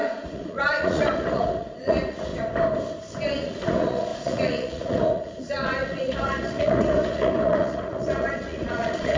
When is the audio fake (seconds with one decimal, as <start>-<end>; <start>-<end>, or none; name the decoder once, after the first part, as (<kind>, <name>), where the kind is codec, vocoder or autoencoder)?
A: 0.0-2.3 (vocoder, Vocos); 3.3-9.2